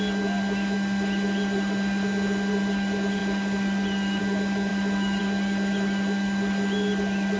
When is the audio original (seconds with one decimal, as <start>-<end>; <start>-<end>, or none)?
0.0-7.4